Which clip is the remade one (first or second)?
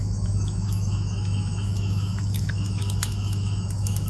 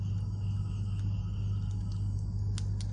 first